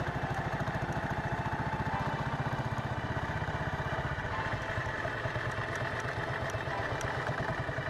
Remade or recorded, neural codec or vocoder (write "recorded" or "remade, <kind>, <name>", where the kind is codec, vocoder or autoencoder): remade, vocoder, BigVGAN v2